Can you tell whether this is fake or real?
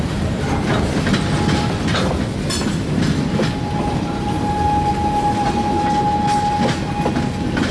real